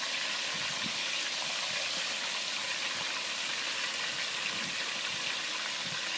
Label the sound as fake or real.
real